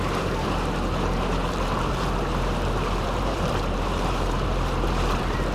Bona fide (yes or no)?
no